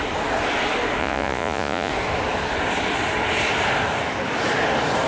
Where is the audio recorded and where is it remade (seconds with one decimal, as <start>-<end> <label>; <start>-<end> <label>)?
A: 0.0-1.0 recorded; 1.0-1.9 remade; 1.9-5.1 recorded